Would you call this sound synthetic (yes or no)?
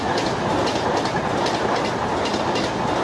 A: no